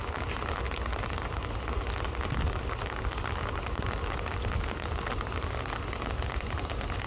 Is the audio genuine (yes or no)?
yes